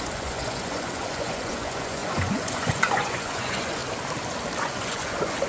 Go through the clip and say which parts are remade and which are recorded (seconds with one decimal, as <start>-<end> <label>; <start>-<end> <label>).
0.0-3.8 remade; 3.8-4.6 recorded; 4.6-5.5 remade